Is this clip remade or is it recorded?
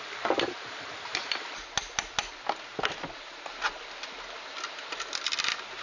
recorded